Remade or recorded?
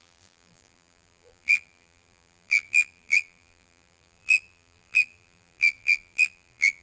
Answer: remade